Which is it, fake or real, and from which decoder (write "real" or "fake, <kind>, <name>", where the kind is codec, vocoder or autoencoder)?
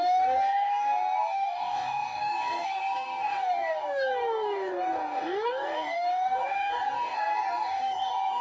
fake, codec, DAC